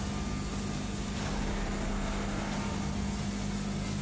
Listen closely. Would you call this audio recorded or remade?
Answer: recorded